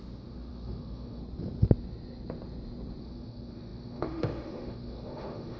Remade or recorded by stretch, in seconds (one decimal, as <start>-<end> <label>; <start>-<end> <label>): 0.0-1.2 remade; 1.2-3.0 recorded; 3.0-5.6 remade